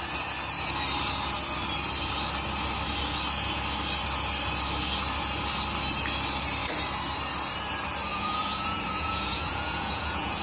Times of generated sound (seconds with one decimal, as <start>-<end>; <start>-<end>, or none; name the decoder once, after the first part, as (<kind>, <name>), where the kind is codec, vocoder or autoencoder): 8.1-10.4 (vocoder, Vocos)